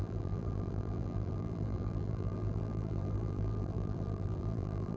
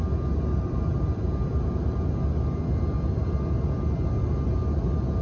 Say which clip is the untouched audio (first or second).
second